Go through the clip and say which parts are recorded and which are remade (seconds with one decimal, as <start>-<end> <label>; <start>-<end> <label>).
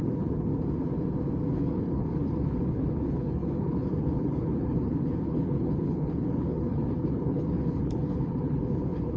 0.0-0.5 remade; 0.5-1.5 recorded; 1.5-9.2 remade